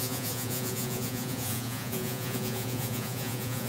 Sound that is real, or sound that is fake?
fake